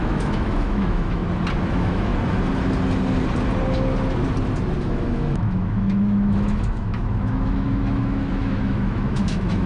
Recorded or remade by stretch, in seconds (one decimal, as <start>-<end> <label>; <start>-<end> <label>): 0.0-1.2 remade; 1.2-1.7 recorded; 1.7-2.1 remade; 2.1-4.8 recorded; 4.8-9.7 remade